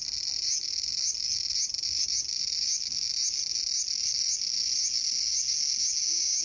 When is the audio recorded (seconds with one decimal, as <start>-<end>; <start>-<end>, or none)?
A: 0.0-6.4